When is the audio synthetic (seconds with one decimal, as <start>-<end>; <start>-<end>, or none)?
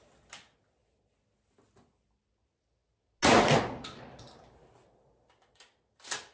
none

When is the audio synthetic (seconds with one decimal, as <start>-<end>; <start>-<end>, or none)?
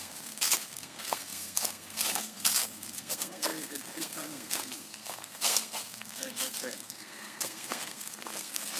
0.0-8.8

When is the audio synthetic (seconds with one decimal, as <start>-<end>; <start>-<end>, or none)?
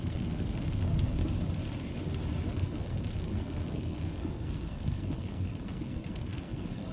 0.0-1.2; 2.5-6.9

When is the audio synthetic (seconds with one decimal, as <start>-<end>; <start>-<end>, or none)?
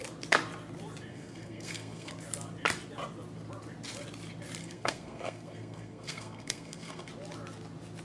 1.1-2.1; 4.6-7.1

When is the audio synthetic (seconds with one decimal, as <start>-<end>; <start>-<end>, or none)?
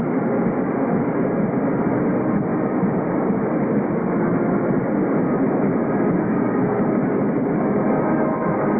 6.2-6.8